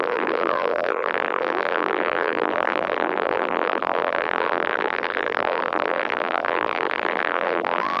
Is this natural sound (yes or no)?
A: no